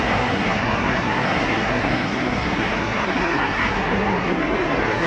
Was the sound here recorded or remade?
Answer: remade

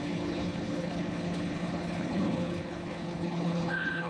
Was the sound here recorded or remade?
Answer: remade